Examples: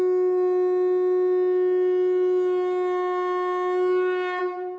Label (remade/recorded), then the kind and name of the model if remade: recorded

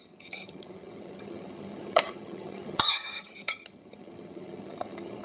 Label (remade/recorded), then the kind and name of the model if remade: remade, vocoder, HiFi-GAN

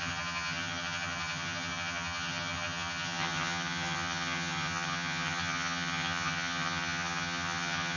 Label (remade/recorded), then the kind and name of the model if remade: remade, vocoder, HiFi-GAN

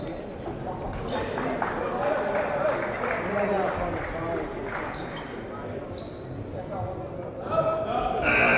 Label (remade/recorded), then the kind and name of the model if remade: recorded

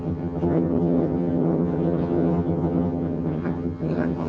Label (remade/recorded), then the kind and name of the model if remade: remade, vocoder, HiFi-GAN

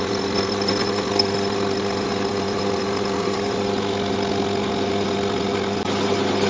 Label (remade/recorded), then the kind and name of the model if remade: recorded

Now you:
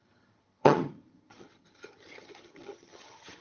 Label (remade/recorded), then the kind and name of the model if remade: remade, vocoder, HiFi-GAN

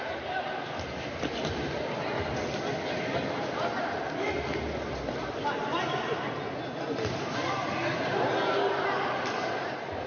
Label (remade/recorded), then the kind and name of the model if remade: recorded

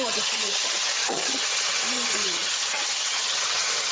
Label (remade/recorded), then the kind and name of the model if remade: remade, vocoder, HiFi-GAN